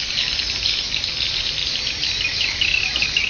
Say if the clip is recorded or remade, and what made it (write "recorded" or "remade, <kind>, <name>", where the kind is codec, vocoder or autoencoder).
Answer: recorded